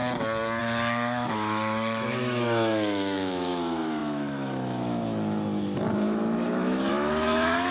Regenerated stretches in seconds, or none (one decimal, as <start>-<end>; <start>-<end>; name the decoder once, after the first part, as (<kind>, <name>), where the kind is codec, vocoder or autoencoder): 0.6-7.7 (autoencoder, DAC-VAE)